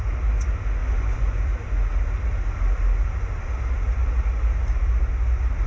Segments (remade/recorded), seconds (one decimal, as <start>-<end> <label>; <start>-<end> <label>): 0.0-0.8 recorded; 0.8-1.4 remade; 1.4-5.7 recorded